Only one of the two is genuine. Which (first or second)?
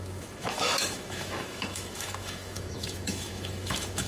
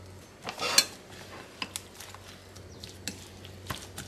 second